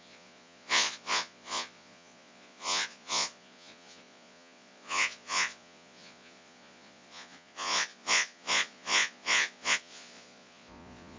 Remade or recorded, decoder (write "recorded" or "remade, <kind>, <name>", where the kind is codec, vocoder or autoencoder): remade, vocoder, Vocos